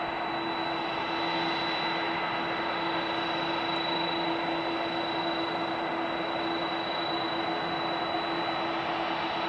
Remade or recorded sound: recorded